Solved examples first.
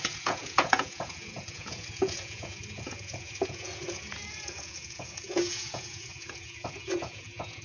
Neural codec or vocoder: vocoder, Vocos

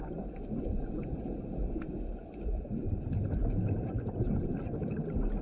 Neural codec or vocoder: none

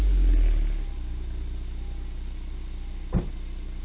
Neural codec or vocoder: none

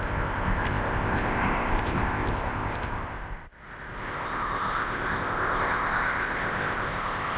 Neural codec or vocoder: codec, ZipCodec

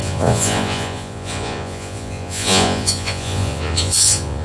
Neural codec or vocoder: vocoder, Vocos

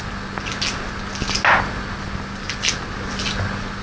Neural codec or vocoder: none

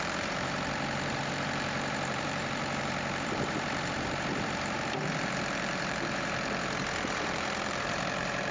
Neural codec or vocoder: vocoder, BigVGAN v2